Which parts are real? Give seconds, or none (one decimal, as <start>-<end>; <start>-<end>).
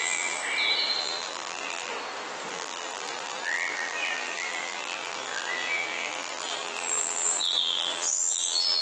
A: 0.4-1.0; 1.9-2.5